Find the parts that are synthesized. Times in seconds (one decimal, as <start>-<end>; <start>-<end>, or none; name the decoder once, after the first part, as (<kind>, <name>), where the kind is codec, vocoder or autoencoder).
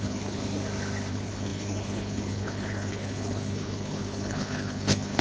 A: 0.0-0.4 (codec, HILCodec); 1.1-5.2